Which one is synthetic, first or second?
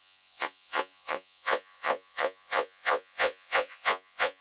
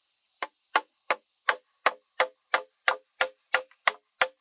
first